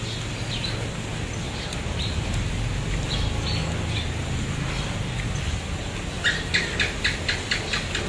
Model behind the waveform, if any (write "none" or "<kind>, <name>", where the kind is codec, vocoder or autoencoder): none